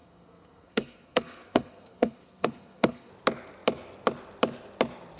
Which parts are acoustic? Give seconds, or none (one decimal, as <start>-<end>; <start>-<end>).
3.1-5.2

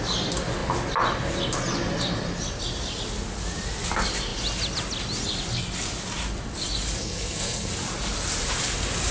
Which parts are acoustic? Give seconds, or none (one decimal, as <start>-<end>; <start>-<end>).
0.0-7.0; 7.7-9.1